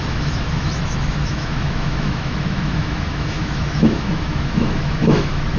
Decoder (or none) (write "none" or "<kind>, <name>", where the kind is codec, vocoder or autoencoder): autoencoder, DAC-VAE